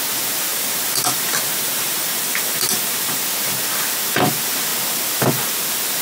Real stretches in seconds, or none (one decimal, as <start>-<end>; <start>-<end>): 0.0-0.5; 3.2-6.0